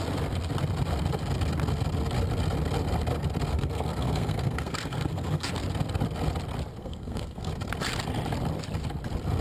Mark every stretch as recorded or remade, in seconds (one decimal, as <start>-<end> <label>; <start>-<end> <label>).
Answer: 0.0-3.5 recorded; 3.5-5.5 remade; 5.5-6.8 recorded; 6.8-7.5 remade; 7.5-9.4 recorded